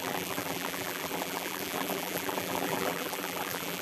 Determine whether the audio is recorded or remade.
remade